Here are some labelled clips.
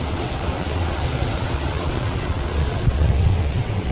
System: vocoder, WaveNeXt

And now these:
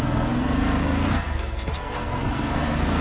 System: codec, SNAC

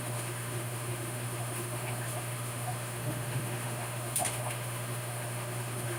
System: autoencoder, DAC-VAE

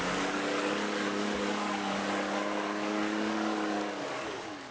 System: codec, DAC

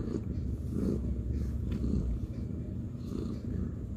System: vocoder, BigVGAN v2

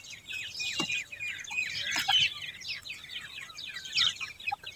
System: none